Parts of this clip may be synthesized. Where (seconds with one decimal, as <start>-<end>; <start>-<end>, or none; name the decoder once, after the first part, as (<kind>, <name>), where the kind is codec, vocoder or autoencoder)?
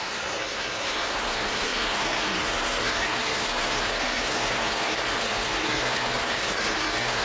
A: 0.0-7.2 (codec, SNAC)